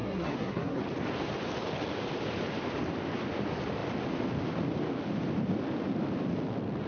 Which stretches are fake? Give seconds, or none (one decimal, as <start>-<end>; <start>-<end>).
0.0-0.8